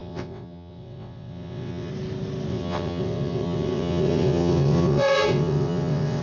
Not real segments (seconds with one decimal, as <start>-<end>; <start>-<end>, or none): 0.0-1.9; 2.5-6.2